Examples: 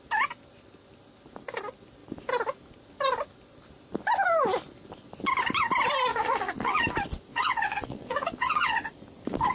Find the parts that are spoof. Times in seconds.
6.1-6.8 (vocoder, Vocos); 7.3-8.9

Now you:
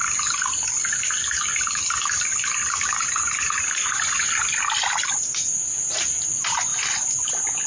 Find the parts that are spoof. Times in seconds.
none

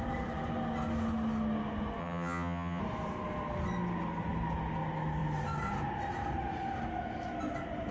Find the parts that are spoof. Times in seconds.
2.0-2.8 (vocoder, HiFi-GAN)

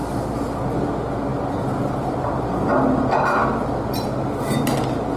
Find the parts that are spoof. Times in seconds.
none

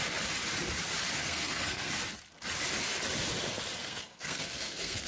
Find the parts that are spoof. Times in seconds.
1.2-1.9 (codec, SNAC); 3.8-5.1

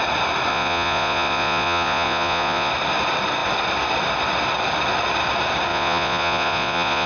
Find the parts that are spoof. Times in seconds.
0.5-2.7 (vocoder, Vocos); 5.7-7.1

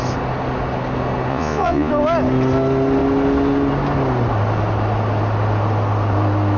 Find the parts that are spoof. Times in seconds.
1.3-1.9 (vocoder, Vocos)

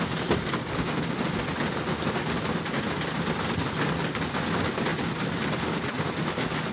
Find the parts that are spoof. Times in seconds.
none